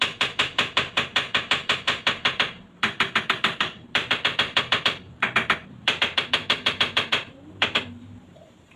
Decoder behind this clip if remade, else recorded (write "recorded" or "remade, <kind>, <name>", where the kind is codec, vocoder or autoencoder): remade, vocoder, BigVGAN v2